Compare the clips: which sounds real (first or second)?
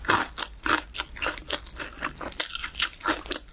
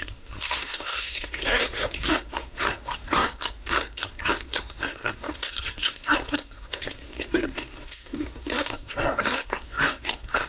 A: first